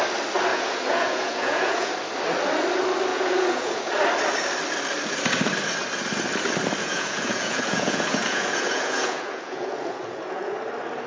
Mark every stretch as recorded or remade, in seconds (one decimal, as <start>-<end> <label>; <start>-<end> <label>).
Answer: 0.0-0.5 recorded; 0.5-1.9 remade; 1.9-3.1 recorded; 3.1-3.9 remade; 3.9-6.8 recorded; 6.8-10.5 remade; 10.5-11.1 recorded

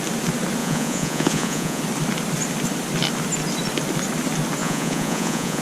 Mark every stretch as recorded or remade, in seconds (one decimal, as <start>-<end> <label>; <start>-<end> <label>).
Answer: 0.0-0.6 recorded; 0.6-1.8 remade; 1.8-4.6 recorded; 4.6-5.6 remade